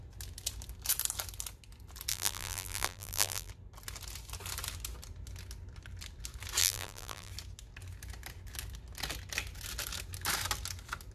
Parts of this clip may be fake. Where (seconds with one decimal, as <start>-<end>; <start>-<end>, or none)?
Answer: 2.1-3.5; 6.6-7.3